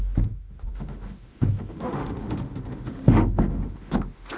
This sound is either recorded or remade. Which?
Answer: remade